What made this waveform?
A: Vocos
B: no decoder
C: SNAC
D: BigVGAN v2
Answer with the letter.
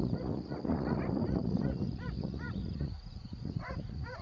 A